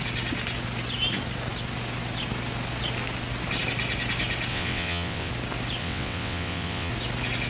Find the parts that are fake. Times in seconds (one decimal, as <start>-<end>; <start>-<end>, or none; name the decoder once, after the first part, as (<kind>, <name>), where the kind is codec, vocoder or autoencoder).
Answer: 4.5-5.3 (vocoder, WaveNeXt); 5.8-6.9